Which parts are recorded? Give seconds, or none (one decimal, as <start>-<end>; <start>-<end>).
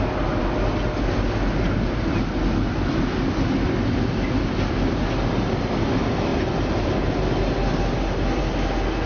0.0-9.1